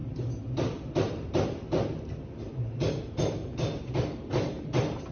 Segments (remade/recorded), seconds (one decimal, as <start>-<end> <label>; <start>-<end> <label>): 0.0-5.1 recorded